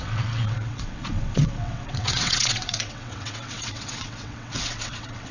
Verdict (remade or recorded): remade